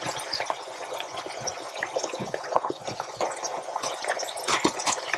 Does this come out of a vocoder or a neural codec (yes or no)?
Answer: yes